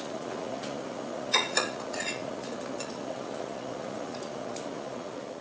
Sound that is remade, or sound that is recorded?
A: remade